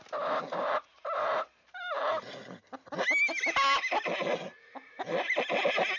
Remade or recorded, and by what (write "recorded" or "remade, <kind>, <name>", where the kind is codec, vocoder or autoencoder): recorded